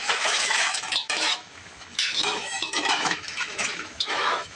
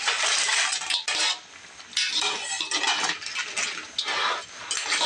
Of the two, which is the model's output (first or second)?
first